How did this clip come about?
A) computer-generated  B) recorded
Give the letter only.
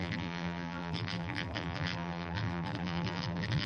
A